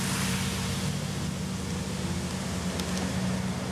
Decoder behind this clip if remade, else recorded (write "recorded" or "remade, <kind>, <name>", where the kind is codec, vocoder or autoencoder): recorded